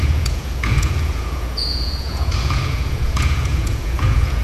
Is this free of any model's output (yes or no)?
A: no